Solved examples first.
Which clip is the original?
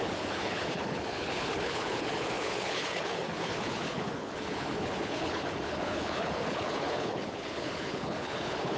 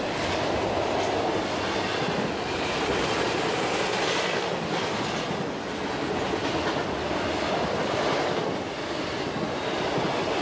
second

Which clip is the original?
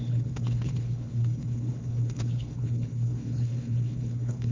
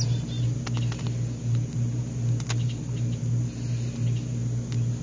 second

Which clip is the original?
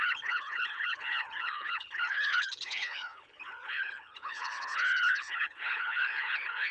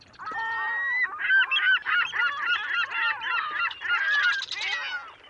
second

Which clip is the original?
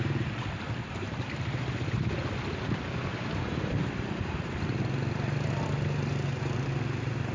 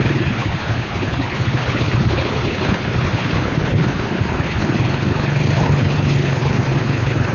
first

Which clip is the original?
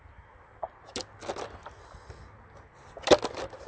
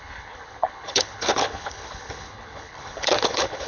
first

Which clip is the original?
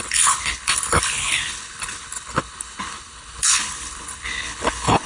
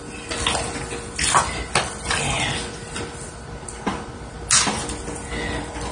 second